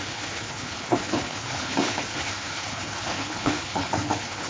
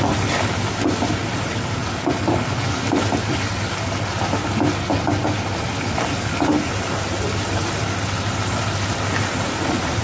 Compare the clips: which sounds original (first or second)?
second